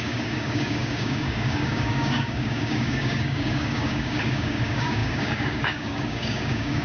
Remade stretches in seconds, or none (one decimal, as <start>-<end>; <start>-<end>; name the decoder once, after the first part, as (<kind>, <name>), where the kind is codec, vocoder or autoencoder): 0.0-6.8 (codec, DAC)